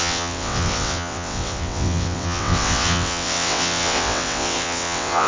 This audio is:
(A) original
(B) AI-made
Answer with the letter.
B